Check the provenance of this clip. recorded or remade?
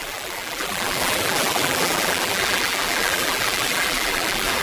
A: remade